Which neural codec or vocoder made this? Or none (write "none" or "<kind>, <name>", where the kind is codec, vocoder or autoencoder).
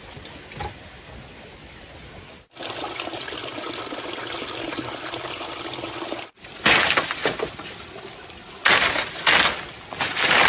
none